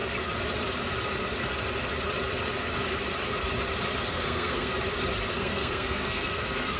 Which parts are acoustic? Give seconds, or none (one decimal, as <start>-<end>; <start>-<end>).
0.0-4.1; 4.7-5.3